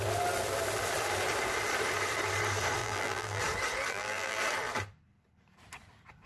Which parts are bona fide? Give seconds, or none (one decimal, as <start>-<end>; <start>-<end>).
0.0-2.8; 3.4-3.9; 4.4-6.3